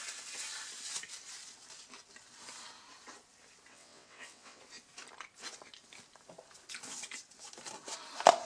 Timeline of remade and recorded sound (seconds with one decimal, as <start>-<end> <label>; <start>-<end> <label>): 0.0-3.7 recorded; 3.7-4.6 remade; 4.6-8.5 recorded